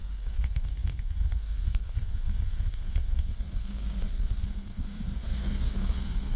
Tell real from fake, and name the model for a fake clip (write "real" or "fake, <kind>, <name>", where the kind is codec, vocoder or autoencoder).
fake, codec, SNAC